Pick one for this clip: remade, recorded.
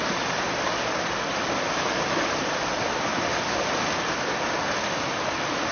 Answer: recorded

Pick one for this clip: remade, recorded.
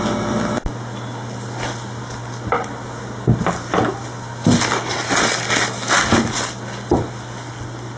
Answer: recorded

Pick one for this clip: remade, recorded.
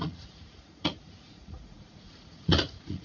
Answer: remade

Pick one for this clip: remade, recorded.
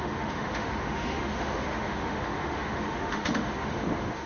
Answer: remade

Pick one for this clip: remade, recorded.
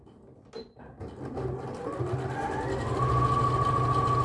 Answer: recorded